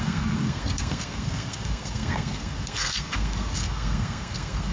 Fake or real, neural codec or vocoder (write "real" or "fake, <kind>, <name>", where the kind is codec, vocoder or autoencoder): fake, codec, SNAC